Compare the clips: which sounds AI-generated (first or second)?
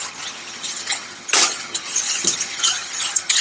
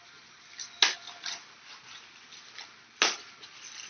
first